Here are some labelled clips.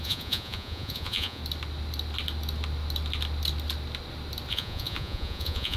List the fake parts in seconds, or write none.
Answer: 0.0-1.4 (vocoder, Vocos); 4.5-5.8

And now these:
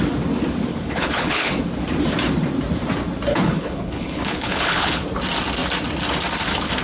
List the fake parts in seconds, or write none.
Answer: 0.7-1.5 (codec, HILCodec); 3.3-5.0

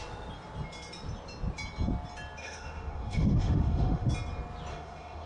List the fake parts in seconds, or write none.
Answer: 2.4-4.1 (autoencoder, DAC-VAE); 4.7-5.3